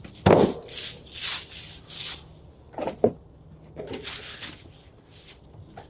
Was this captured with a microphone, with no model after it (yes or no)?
yes